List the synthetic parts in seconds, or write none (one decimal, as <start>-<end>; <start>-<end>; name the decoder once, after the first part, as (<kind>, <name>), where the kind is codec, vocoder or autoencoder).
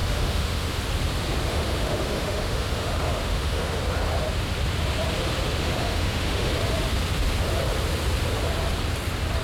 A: 0.0-0.8 (autoencoder, DAC-VAE); 1.5-3.8; 5.6-6.5